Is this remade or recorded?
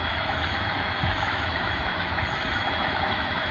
remade